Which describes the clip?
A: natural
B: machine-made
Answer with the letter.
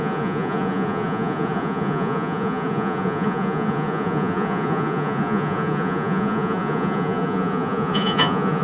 B